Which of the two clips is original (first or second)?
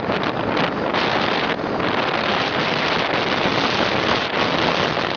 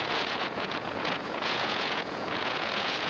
first